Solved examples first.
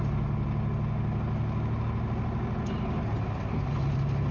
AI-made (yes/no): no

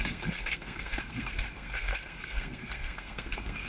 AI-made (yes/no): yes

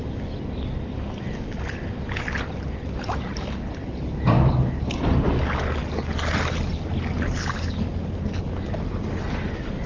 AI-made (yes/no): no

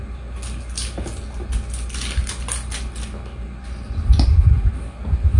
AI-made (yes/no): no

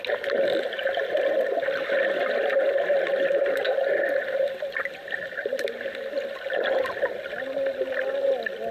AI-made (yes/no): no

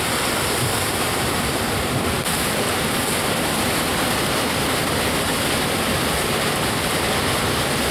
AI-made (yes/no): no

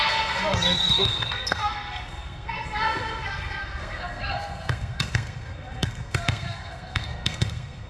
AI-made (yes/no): yes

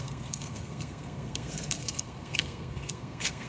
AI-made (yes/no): yes